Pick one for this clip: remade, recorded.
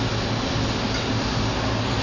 recorded